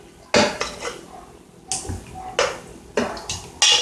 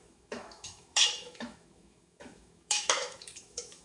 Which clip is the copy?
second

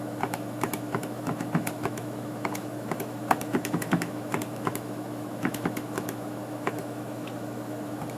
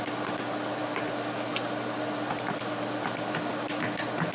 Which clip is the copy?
first